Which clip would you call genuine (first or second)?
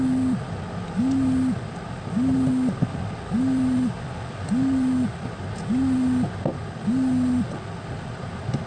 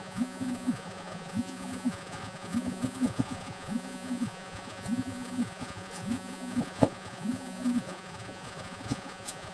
first